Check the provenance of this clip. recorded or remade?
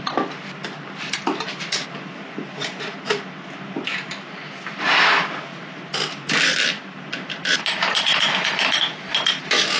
recorded